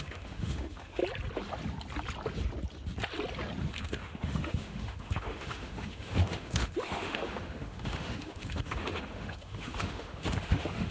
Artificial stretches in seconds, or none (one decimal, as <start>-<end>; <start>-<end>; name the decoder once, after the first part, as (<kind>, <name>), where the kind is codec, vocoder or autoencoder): 0.0-1.0 (autoencoder, DAC-VAE); 3.7-10.9